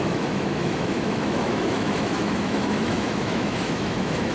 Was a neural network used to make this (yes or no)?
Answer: yes